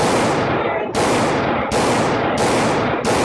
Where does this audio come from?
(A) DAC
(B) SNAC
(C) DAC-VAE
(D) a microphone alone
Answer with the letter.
D